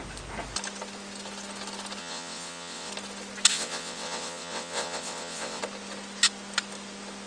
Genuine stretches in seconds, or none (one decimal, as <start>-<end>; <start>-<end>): 0.0-2.0; 2.9-3.5; 5.6-7.3